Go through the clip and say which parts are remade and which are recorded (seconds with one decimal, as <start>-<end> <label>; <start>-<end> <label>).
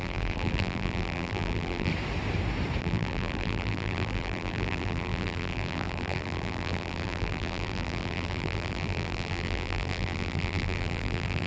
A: 0.0-1.9 remade; 1.9-2.8 recorded; 2.8-11.5 remade